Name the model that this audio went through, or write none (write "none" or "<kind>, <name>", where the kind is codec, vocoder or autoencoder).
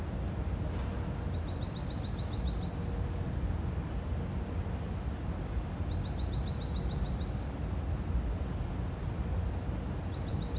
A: none